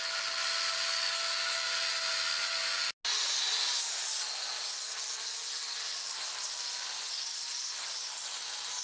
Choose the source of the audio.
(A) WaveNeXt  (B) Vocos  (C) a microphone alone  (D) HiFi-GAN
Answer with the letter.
C